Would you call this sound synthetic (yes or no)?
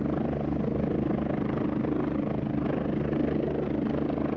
no